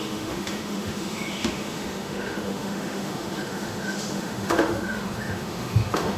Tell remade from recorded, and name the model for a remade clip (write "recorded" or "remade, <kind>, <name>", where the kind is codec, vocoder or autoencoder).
remade, autoencoder, DAC-VAE